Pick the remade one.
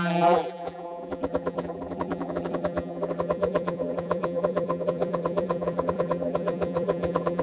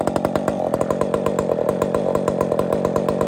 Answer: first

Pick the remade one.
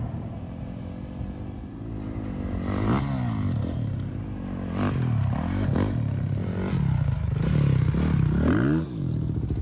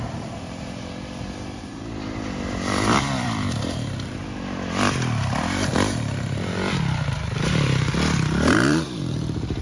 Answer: second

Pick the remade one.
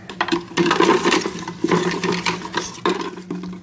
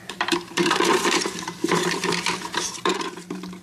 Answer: second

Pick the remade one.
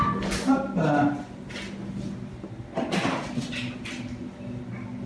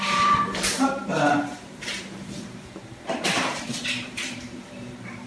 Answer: second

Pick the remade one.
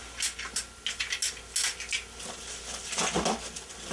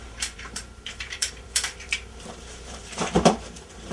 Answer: second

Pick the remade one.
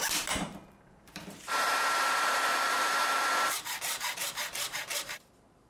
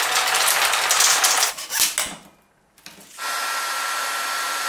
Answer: first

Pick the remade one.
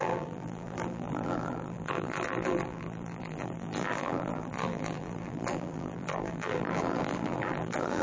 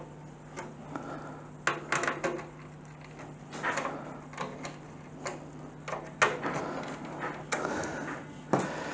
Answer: first